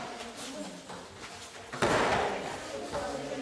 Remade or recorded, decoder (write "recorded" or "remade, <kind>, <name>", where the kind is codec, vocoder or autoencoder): recorded